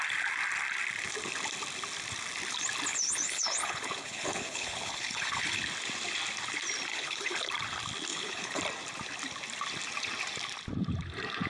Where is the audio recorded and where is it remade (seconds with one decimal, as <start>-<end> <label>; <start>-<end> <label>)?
0.0-2.9 recorded; 2.9-5.6 remade; 5.6-6.9 recorded; 6.9-7.5 remade; 7.5-8.1 recorded; 8.1-8.6 remade; 8.6-11.5 recorded